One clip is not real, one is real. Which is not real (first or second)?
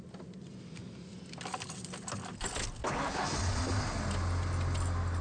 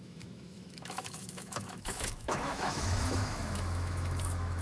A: second